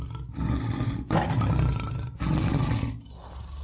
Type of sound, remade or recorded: recorded